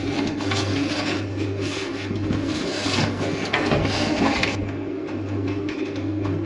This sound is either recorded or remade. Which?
remade